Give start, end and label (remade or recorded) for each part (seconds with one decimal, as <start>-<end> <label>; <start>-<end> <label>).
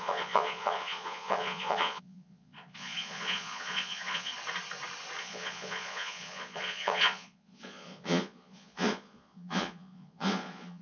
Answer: 0.0-4.3 remade; 4.3-5.2 recorded; 5.2-10.8 remade